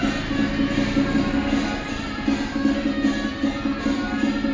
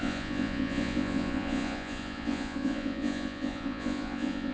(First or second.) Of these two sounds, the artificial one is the second